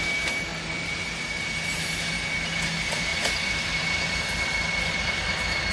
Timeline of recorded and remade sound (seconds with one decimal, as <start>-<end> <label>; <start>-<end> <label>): 0.0-3.1 recorded; 3.1-4.2 remade; 4.2-5.7 recorded